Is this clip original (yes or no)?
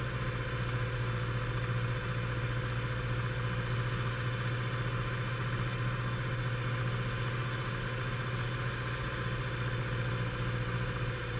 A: yes